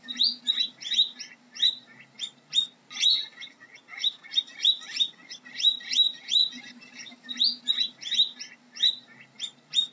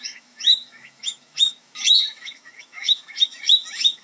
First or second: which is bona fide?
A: first